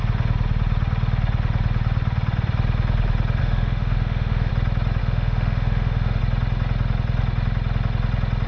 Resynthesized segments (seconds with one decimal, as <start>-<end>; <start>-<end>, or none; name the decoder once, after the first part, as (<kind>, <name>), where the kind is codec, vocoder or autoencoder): 3.4-4.5 (autoencoder, DAC-VAE); 5.0-6.2

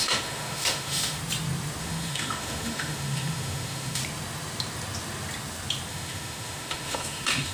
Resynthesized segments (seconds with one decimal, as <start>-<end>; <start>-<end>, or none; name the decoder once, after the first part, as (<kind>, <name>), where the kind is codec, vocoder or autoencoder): 0.0-1.2 (autoencoder, DAC-VAE); 1.8-4.0; 5.9-7.5

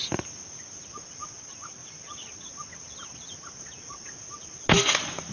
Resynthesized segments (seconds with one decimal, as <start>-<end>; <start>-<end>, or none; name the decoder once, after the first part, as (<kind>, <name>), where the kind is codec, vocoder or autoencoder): none

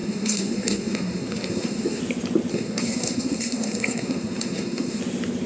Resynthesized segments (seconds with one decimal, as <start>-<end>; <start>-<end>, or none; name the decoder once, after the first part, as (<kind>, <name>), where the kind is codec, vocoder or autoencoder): 0.0-2.0 (codec, SNAC); 2.5-5.0

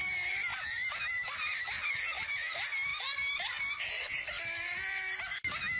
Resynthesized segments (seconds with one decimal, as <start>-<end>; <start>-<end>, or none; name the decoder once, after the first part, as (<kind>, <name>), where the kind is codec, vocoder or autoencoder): none

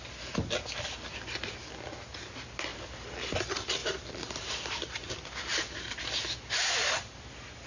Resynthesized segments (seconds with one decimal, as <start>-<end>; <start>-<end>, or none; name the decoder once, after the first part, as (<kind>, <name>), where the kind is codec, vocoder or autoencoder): 3.8-5.1 (vocoder, BigVGAN v2); 5.5-6.1

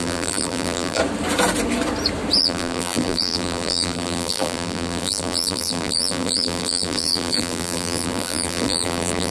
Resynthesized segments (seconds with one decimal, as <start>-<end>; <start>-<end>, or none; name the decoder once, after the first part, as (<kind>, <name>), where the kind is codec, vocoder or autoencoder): 0.0-1.0 (vocoder, BigVGAN v2); 2.4-9.3